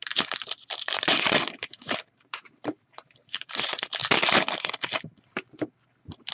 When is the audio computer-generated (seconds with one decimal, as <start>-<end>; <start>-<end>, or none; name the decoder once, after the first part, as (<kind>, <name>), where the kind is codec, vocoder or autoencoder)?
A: 0.0-4.0 (vocoder, BigVGAN v2)